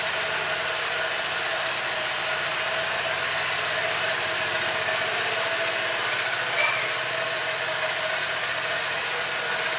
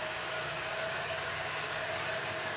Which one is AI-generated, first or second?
second